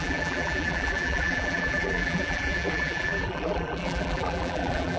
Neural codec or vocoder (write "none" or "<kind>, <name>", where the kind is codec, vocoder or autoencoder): vocoder, BigVGAN v2